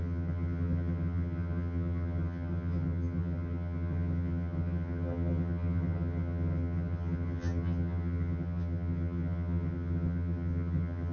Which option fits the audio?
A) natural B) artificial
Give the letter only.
B